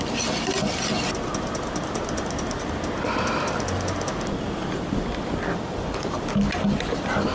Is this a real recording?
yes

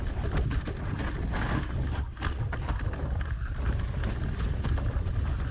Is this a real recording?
yes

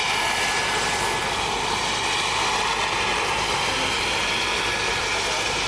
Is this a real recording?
yes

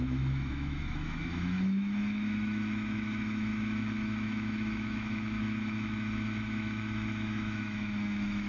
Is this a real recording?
no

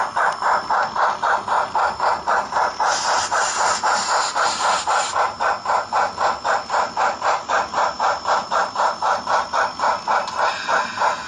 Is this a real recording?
yes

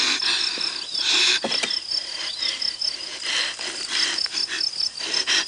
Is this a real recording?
yes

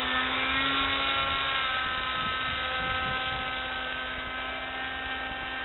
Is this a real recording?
yes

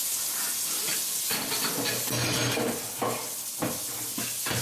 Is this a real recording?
yes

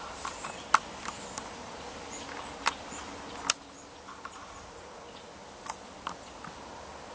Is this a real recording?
yes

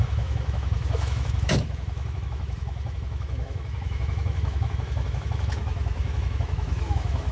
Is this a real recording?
no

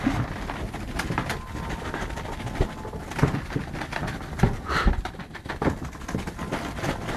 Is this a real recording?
yes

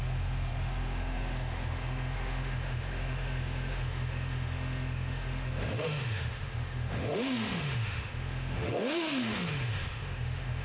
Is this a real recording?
no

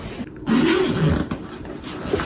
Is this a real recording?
yes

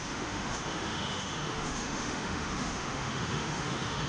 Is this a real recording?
no